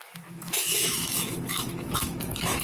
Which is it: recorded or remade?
remade